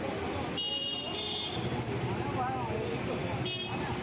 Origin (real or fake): real